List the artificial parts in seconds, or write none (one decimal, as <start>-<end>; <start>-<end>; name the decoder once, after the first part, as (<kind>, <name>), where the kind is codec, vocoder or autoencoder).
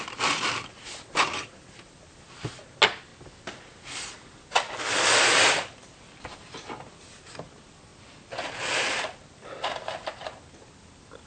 none